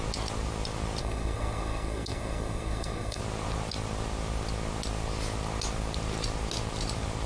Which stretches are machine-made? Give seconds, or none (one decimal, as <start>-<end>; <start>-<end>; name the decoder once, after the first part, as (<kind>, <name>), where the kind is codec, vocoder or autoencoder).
1.0-3.2 (codec, SNAC)